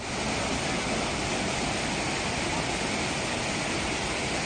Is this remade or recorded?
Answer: recorded